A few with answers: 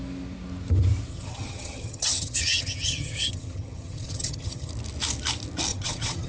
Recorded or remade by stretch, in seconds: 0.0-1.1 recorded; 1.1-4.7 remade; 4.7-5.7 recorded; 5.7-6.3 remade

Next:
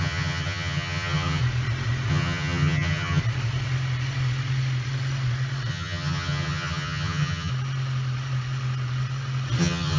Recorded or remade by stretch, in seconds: 0.0-1.4 remade; 1.4-2.1 recorded; 2.1-3.2 remade; 3.2-5.7 recorded; 5.7-7.5 remade; 7.5-9.6 recorded; 9.6-10.0 remade

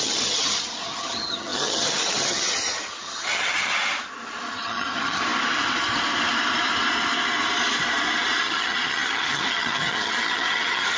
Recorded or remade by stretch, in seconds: 0.0-3.7 remade; 3.7-4.5 recorded; 4.5-5.2 remade; 5.2-8.4 recorded; 8.4-11.0 remade

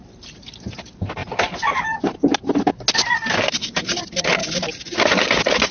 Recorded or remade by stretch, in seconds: 0.0-5.7 recorded

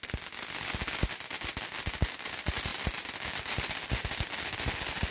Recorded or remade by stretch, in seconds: 0.0-5.1 recorded

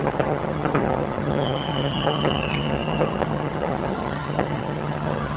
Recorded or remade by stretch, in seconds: 0.0-5.4 remade

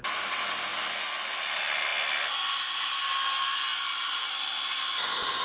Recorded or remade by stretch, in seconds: 0.0-5.4 recorded

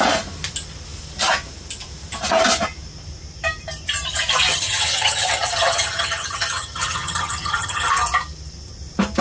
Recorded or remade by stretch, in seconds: 0.0-4.5 recorded; 4.5-7.9 remade; 7.9-9.2 recorded